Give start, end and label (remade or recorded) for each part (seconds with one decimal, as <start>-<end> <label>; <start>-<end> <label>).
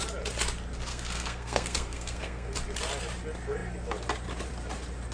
0.0-0.9 recorded; 0.9-2.5 remade; 2.5-5.1 recorded